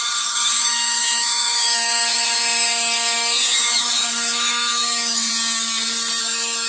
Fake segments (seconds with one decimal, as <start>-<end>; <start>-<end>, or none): 0.0-5.3; 6.2-6.7